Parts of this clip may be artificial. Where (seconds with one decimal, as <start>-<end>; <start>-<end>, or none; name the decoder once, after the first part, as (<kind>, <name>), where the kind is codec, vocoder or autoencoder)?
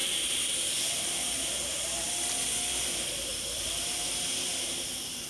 0.0-2.1 (vocoder, BigVGAN v2); 3.3-4.7